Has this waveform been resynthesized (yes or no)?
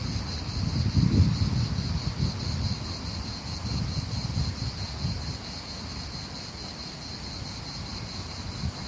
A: no